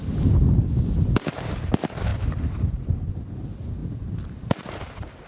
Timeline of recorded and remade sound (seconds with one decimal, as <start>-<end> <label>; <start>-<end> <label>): 0.0-5.3 recorded